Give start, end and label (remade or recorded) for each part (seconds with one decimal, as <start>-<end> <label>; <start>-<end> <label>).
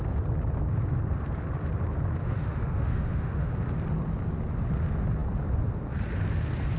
0.0-2.2 recorded; 2.2-3.5 remade; 3.5-6.8 recorded